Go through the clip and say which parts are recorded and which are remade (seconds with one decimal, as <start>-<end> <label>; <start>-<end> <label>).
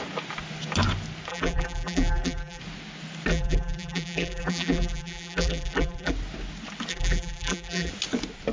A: 0.0-1.3 recorded; 1.3-2.6 remade; 2.6-3.3 recorded; 3.3-6.1 remade; 6.1-6.9 recorded; 6.9-7.9 remade; 7.9-8.5 recorded